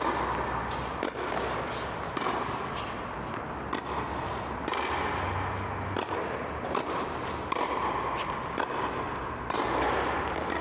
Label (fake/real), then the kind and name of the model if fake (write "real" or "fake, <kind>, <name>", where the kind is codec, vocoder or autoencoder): real